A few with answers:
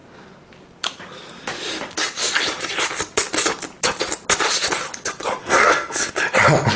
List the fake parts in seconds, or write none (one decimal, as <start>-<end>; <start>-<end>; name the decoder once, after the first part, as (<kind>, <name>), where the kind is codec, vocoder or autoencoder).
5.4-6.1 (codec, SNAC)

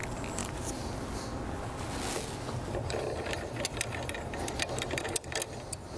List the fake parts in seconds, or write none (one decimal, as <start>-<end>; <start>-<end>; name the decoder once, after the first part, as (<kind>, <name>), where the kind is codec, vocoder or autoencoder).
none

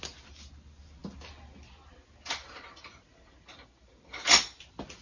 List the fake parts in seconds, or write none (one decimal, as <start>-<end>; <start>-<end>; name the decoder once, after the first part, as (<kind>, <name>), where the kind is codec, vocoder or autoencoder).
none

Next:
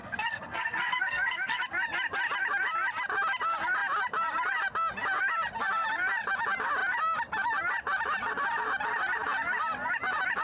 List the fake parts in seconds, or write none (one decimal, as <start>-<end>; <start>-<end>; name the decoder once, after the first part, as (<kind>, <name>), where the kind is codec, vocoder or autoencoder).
0.0-1.6 (codec, SNAC)

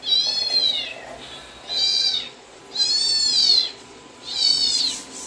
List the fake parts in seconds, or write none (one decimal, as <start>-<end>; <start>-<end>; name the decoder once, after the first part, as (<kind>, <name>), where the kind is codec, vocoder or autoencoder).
1.9-2.6 (vocoder, Vocos); 3.4-4.8

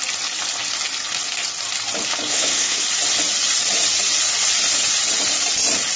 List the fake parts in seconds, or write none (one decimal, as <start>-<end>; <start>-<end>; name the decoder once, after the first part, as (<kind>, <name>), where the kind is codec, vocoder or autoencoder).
2.3-2.8 (codec, SNAC)

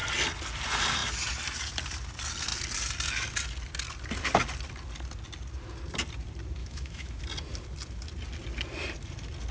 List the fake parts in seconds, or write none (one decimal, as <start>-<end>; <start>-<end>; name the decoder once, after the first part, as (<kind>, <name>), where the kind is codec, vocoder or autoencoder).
6.6-7.2 (autoencoder, DAC-VAE)